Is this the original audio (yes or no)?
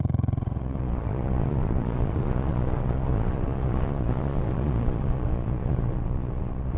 no